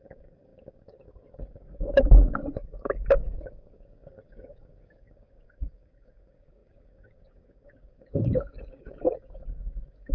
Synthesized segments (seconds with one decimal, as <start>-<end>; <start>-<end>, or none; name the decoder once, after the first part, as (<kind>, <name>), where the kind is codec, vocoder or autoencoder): 0.0-10.1 (codec, DAC)